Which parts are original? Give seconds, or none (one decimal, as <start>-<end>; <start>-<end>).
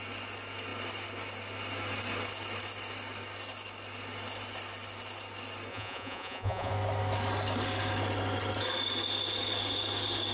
0.0-5.7; 6.7-10.3